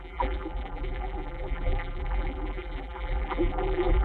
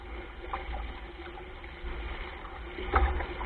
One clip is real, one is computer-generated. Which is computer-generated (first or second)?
first